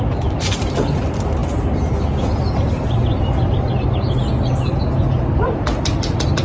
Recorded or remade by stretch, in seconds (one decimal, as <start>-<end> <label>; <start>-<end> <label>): 0.0-6.4 recorded